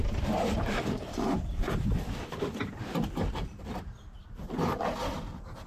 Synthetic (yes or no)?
yes